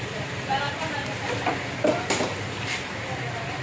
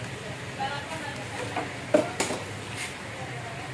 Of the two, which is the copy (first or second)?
first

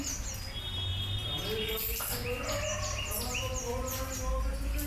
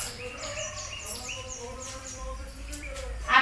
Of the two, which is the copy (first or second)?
second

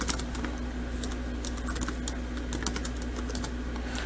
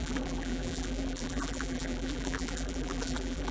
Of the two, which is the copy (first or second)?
second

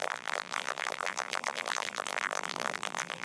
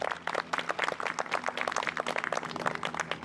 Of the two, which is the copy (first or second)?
first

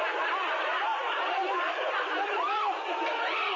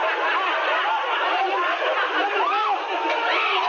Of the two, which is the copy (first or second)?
first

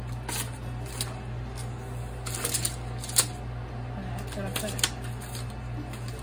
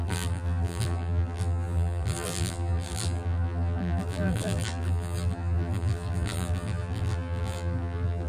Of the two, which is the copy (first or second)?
second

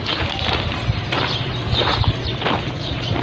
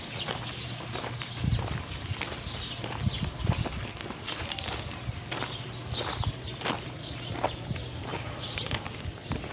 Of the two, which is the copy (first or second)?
first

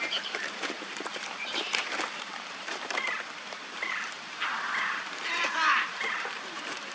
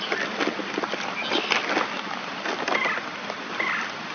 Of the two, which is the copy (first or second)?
first